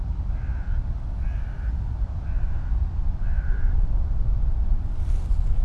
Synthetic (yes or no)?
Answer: no